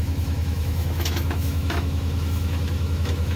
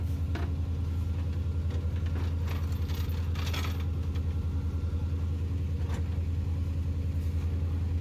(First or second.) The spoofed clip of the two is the first